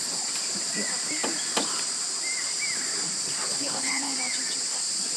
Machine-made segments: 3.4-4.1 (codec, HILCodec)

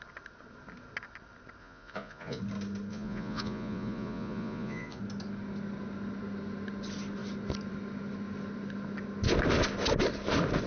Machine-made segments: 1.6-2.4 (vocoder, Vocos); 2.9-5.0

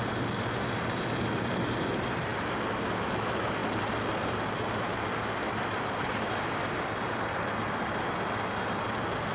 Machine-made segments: 3.6-8.0 (vocoder, BigVGAN v2)